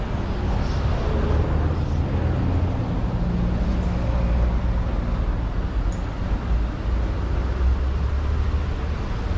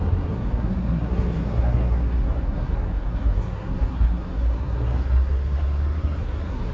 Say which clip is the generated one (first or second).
second